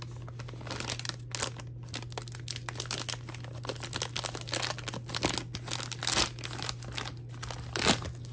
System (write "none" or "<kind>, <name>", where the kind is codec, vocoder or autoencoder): none